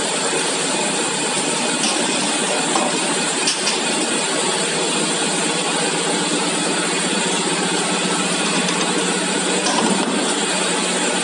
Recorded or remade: remade